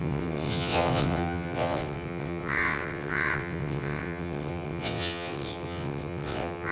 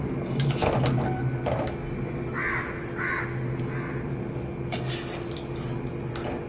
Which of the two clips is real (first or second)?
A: second